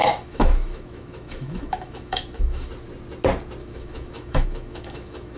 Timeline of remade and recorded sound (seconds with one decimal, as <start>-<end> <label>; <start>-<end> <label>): 0.0-2.7 remade; 2.7-3.6 recorded; 3.6-5.4 remade